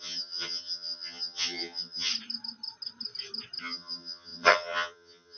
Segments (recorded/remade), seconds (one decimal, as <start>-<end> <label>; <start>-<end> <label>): 0.0-2.1 remade; 2.1-3.6 recorded; 3.6-5.4 remade